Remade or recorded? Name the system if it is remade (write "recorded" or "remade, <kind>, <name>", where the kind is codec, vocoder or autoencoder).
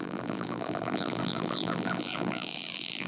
remade, vocoder, BigVGAN v2